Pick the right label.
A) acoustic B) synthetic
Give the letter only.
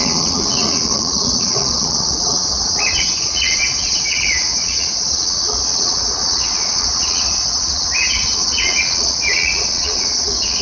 B